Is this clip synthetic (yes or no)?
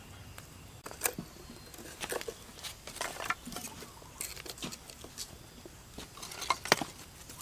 no